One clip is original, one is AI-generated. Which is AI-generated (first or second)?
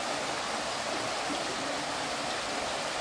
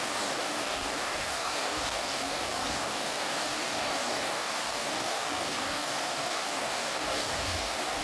second